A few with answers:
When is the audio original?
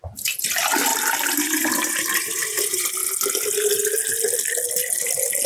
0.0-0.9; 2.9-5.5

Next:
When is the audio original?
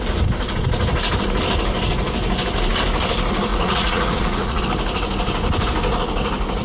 0.0-3.5; 4.6-6.6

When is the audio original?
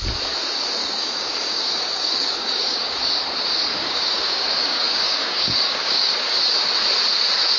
0.0-0.8; 3.1-3.7; 6.1-7.6